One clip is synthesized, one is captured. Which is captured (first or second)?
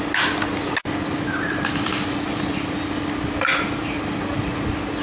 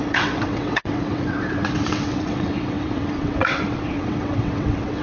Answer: first